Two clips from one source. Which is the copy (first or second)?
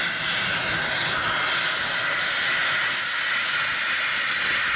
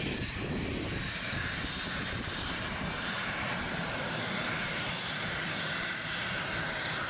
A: second